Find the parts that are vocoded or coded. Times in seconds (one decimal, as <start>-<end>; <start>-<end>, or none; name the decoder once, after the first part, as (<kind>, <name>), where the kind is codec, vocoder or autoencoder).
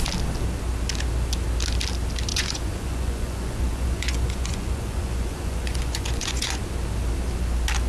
2.3-6.6 (vocoder, Vocos)